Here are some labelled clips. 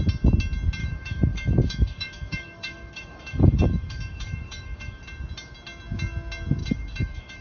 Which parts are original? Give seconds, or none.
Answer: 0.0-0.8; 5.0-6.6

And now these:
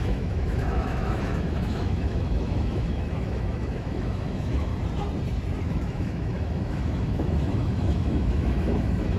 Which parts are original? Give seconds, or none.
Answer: 4.7-5.6